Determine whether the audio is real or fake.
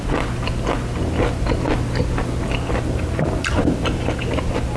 real